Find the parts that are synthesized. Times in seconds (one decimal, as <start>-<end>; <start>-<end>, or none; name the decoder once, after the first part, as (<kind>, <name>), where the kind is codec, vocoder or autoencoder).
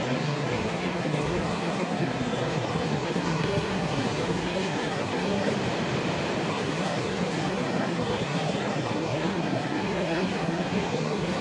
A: 0.0-5.5 (codec, SNAC); 6.5-11.4